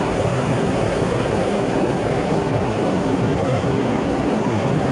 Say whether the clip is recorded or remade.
remade